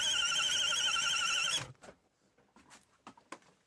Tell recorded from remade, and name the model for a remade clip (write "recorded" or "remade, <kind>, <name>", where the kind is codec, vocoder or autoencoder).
recorded